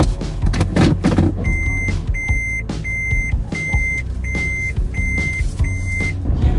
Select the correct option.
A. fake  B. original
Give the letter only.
B